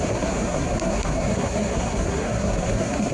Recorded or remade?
remade